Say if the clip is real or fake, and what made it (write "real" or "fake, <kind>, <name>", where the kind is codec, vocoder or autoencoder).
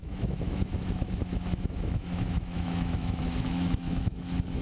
fake, autoencoder, DAC-VAE